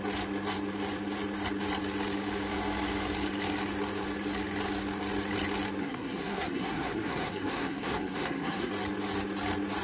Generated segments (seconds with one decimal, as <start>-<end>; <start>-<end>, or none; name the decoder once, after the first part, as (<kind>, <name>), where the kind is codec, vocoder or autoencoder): 5.8-8.7 (codec, SNAC)